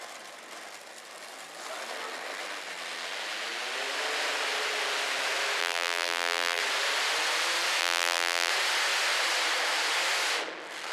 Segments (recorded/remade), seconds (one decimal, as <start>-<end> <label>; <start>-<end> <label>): 0.0-5.6 recorded; 5.6-6.6 remade; 6.6-7.8 recorded; 7.8-8.5 remade; 8.5-10.9 recorded